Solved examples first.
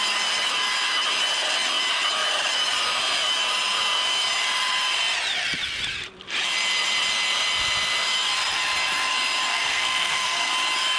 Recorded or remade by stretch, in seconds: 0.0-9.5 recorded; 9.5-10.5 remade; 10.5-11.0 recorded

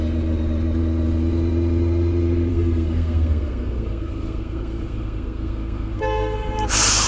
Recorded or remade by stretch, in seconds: 0.0-2.5 recorded; 2.5-6.5 remade; 6.5-7.1 recorded

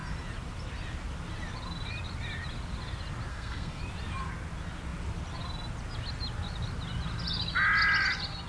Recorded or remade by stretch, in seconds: 0.0-3.3 recorded; 3.3-3.8 remade; 3.8-8.5 recorded

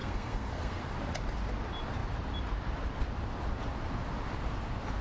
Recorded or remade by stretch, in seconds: 0.0-0.8 remade; 0.8-5.0 recorded

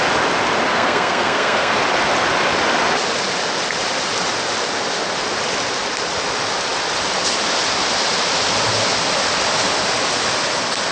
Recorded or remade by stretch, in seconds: 0.0-0.7 recorded; 0.7-1.7 remade; 1.7-10.9 recorded

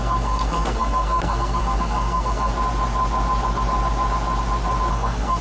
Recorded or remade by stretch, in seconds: 0.0-2.5 remade; 2.5-4.9 recorded; 4.9-5.4 remade

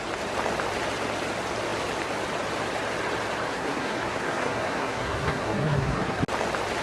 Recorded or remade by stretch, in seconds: 0.0-3.5 recorded; 3.5-6.2 remade; 6.2-6.8 recorded

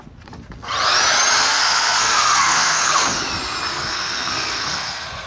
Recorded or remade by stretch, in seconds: 0.0-1.4 recorded; 1.4-3.2 remade; 3.2-3.7 recorded; 3.7-5.3 remade